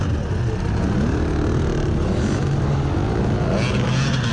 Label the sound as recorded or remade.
recorded